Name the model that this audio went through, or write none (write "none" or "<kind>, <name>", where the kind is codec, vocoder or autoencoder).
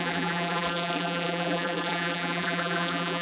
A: vocoder, BigVGAN v2